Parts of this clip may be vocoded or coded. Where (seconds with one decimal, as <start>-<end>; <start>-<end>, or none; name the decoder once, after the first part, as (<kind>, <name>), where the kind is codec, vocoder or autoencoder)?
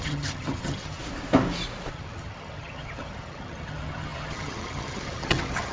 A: 0.0-1.0 (vocoder, HiFi-GAN); 1.9-5.7